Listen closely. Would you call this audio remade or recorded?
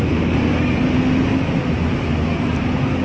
recorded